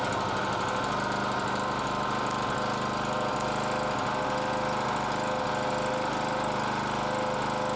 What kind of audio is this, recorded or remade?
recorded